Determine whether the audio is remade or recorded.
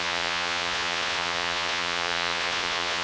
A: remade